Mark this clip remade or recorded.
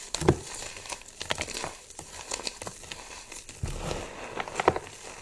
recorded